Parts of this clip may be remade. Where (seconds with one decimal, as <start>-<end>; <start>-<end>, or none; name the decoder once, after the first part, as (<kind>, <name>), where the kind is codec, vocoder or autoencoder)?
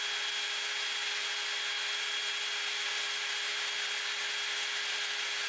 none